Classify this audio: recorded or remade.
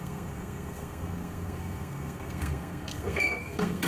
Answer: remade